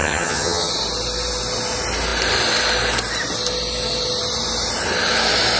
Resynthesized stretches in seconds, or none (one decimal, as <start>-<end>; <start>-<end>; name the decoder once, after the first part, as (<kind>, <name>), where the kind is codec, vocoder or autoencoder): 0.0-0.7 (vocoder, HiFi-GAN)